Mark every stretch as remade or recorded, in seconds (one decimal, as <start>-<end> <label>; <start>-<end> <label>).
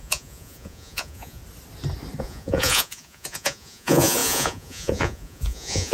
0.0-1.4 remade; 1.4-2.2 recorded; 2.2-5.9 remade